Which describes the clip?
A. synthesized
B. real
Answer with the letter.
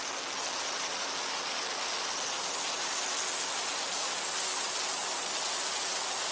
B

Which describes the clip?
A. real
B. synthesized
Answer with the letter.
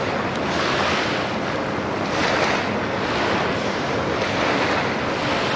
A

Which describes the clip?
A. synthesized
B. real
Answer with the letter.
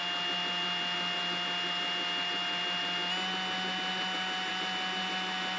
B